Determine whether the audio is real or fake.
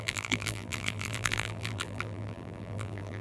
fake